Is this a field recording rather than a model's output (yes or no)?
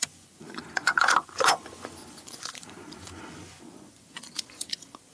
no